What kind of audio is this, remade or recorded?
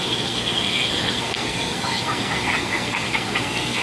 remade